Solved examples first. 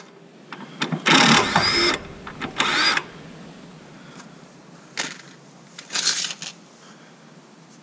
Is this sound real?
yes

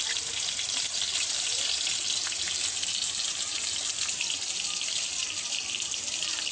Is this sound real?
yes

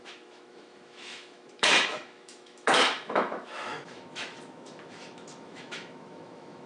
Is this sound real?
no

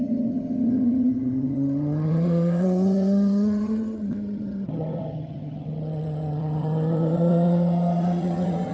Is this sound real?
no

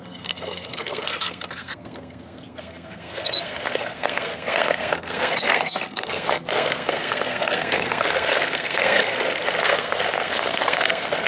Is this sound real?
no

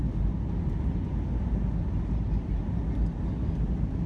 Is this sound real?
yes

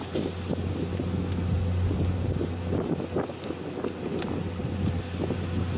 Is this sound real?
yes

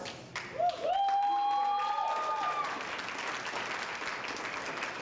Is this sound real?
yes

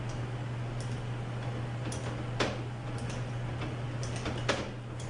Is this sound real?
yes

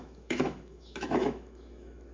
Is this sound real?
no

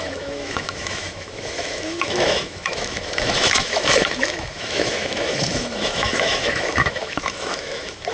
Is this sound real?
no